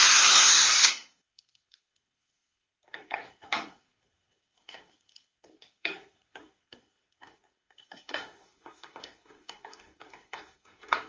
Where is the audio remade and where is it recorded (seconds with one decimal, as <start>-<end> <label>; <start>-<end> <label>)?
0.0-11.1 remade